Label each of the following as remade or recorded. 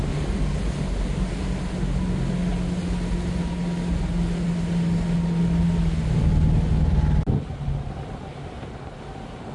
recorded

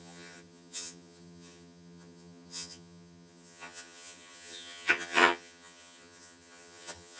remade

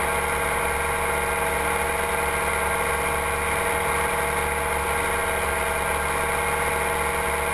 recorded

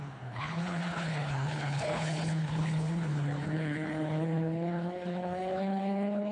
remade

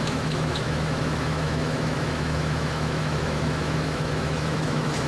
remade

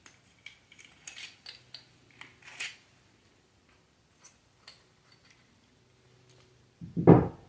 recorded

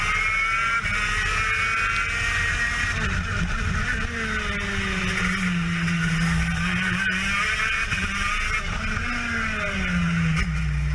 recorded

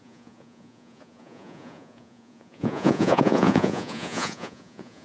remade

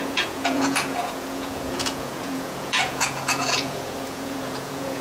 remade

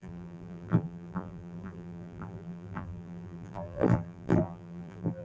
remade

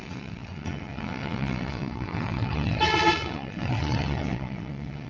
remade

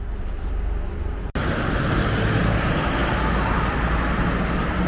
recorded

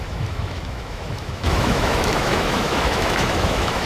remade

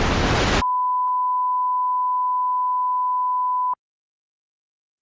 recorded